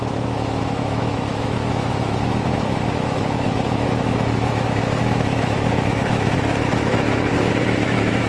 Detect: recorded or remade remade